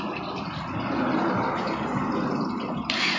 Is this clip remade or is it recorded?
recorded